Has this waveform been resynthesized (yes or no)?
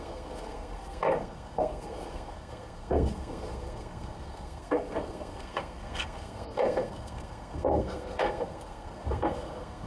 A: yes